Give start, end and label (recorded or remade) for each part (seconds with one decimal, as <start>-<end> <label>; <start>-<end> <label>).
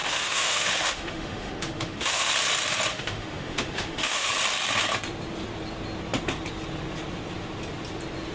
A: 0.0-2.3 remade; 2.3-2.9 recorded; 2.9-4.3 remade; 4.3-8.3 recorded